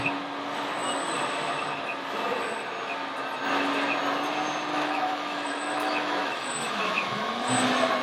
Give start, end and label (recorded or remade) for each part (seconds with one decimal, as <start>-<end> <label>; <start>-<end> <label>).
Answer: 0.0-4.7 recorded; 4.7-7.5 remade; 7.5-8.0 recorded